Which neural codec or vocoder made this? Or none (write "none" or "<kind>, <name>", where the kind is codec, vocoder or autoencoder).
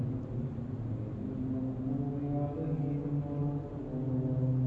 none